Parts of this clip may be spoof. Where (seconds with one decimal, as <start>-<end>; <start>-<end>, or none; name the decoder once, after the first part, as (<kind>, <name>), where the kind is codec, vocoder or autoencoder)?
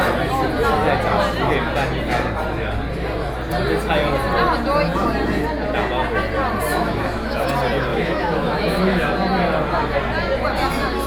6.7-7.4 (autoencoder, DAC-VAE); 7.9-9.1